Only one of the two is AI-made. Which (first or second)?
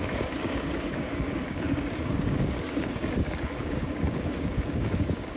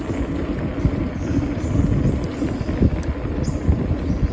first